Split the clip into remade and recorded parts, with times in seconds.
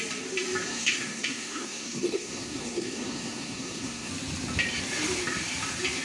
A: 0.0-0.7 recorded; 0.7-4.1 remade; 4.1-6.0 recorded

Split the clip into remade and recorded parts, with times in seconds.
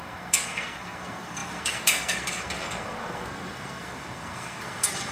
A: 0.0-5.1 remade